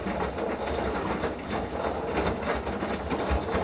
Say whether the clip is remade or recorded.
recorded